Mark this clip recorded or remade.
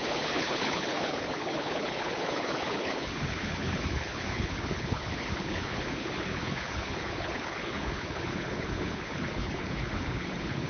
remade